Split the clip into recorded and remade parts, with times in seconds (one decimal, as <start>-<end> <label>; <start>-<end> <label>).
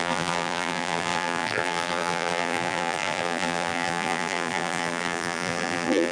0.0-6.1 remade